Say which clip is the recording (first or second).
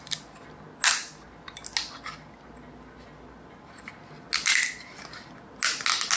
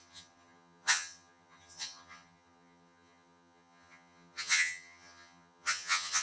first